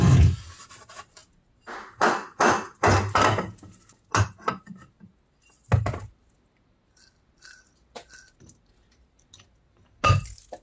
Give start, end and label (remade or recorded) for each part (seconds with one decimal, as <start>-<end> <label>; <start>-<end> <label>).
0.0-10.6 recorded